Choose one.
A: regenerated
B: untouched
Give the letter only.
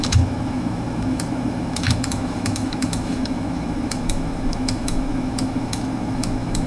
A